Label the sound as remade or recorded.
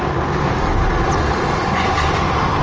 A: recorded